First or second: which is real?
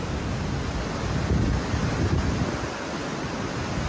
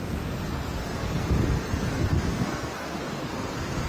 first